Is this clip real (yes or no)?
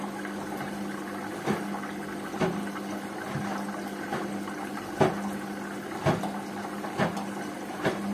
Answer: yes